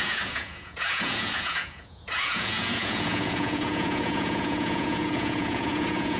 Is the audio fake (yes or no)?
yes